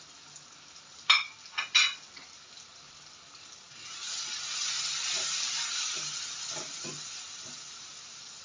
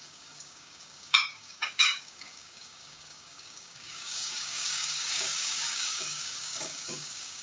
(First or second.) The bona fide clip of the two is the first